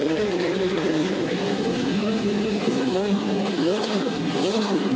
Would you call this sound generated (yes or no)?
yes